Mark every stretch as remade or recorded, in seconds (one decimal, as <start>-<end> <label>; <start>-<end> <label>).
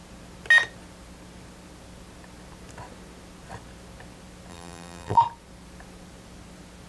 0.0-4.5 recorded; 4.5-5.2 remade; 5.2-6.9 recorded